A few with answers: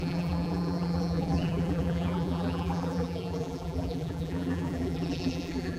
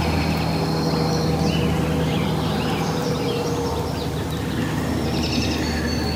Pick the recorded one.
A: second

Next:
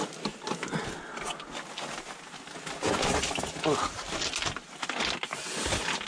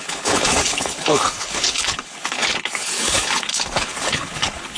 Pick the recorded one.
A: first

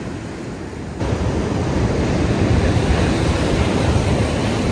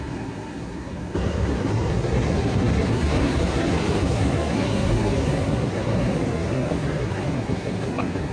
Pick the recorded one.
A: first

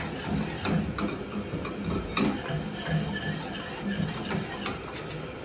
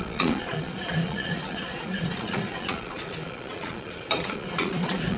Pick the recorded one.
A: first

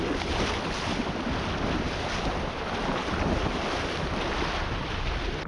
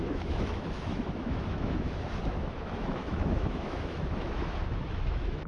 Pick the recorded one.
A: first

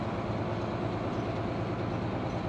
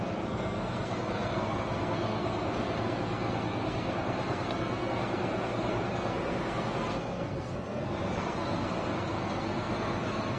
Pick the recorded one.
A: first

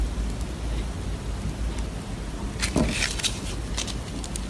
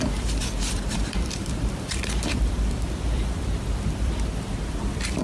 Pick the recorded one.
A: first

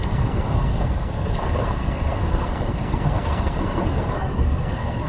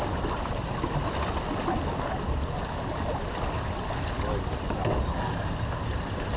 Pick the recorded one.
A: second